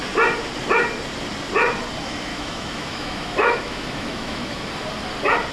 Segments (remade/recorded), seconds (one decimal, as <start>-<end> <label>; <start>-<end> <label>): 0.0-2.3 recorded; 2.3-4.7 remade; 4.7-5.5 recorded